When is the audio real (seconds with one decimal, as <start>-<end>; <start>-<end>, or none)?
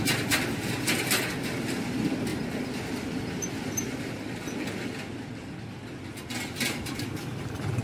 0.0-7.8